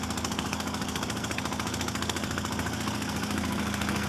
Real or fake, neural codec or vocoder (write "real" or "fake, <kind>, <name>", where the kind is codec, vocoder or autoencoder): fake, codec, SNAC